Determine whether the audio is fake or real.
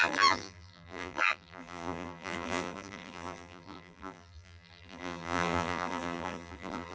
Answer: fake